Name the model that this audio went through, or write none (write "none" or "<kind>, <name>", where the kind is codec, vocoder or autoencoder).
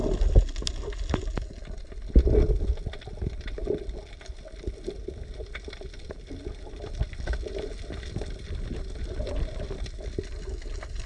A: none